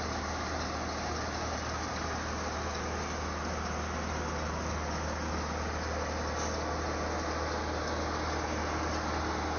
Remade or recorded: recorded